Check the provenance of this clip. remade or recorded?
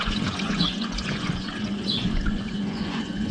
remade